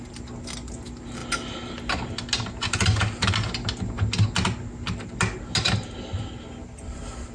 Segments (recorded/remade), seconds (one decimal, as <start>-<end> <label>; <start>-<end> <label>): 0.0-7.3 recorded